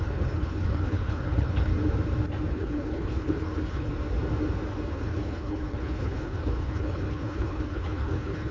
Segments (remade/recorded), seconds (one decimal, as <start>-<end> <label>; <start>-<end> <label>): 0.0-1.7 remade; 1.7-2.5 recorded; 2.5-3.9 remade; 3.9-4.9 recorded; 4.9-8.5 remade